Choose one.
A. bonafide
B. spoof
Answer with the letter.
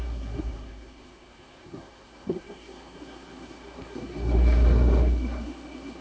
B